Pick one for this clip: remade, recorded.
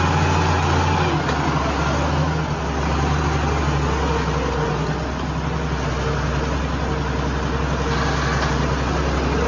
recorded